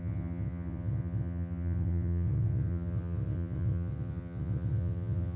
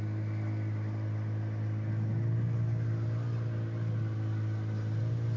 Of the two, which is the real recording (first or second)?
second